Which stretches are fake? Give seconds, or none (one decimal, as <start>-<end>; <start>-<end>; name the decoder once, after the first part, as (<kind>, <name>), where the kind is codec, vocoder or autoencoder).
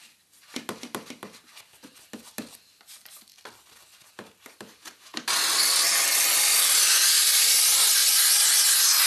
none